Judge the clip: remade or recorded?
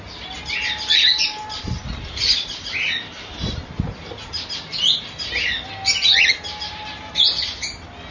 recorded